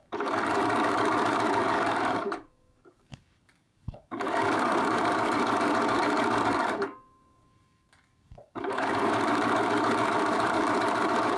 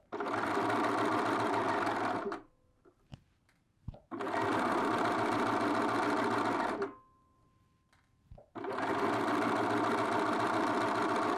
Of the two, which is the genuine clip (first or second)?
second